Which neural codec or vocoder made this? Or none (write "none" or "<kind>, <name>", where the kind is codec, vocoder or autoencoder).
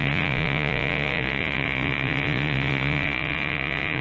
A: vocoder, Vocos